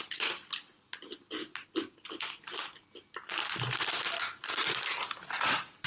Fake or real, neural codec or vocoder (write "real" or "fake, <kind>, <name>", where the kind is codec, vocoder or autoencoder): real